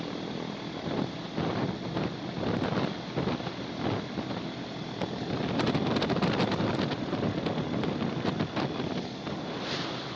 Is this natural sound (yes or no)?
yes